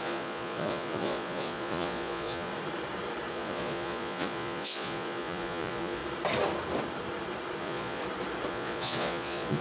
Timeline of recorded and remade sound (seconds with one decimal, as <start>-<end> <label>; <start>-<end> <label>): 0.0-2.5 remade; 2.5-3.3 recorded; 3.3-6.0 remade; 6.0-7.6 recorded; 7.6-8.0 remade; 8.0-8.5 recorded; 8.5-9.6 remade